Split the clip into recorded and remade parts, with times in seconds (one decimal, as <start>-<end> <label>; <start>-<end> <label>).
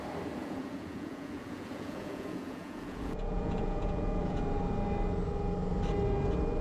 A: 0.0-0.4 recorded; 0.4-4.4 remade; 4.4-6.6 recorded